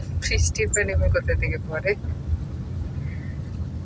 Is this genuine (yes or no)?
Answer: yes